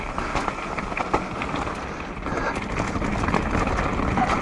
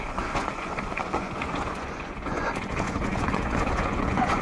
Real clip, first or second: first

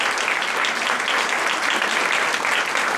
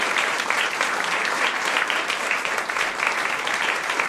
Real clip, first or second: first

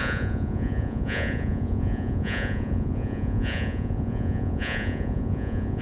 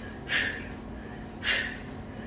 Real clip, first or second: second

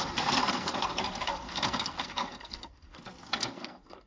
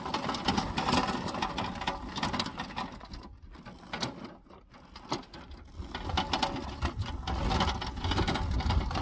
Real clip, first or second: second